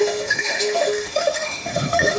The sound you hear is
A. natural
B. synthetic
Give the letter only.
B